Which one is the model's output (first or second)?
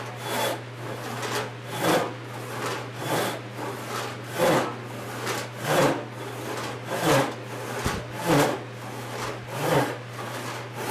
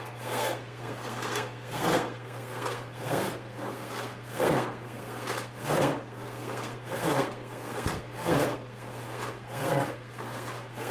second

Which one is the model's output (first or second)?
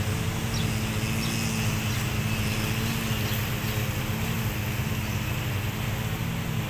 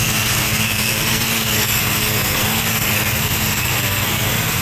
second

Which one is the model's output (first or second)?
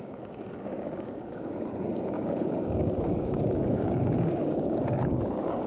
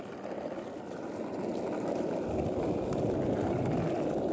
first